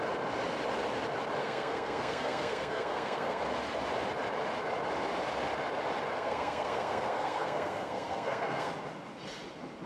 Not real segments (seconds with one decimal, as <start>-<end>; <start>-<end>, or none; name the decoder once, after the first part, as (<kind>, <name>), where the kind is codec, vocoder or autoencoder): 1.4-3.4 (codec, SNAC); 6.1-8.7